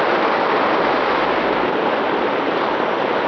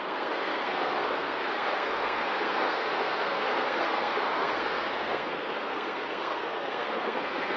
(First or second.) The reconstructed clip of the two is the second